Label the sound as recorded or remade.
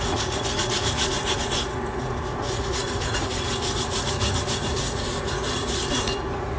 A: remade